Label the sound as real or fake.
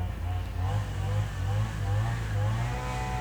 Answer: real